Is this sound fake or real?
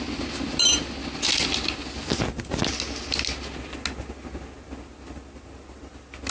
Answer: real